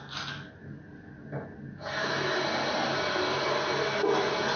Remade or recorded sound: recorded